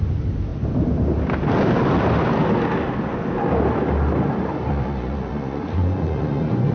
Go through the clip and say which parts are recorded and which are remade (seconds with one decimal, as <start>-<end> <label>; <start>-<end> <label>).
0.0-4.7 recorded; 4.7-6.7 remade